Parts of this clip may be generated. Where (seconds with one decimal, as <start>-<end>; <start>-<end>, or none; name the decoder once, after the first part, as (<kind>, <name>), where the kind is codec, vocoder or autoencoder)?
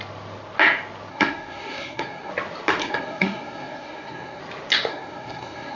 1.1-2.3 (codec, SNAC); 2.8-4.4; 4.9-5.8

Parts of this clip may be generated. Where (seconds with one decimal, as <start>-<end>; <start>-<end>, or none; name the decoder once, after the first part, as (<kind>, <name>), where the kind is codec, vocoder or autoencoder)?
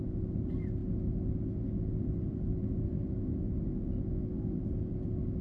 none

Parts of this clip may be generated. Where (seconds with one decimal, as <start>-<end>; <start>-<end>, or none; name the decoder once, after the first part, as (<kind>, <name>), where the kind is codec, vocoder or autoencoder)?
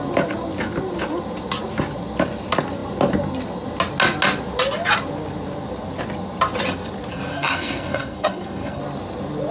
7.1-8.8 (codec, SNAC)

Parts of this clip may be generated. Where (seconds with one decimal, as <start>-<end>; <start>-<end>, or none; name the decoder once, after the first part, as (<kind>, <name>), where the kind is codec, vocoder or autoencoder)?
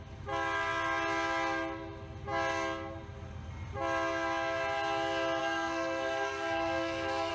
5.4-7.3 (codec, SNAC)